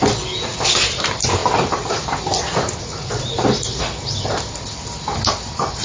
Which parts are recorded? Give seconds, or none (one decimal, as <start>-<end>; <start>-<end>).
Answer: 0.0-5.8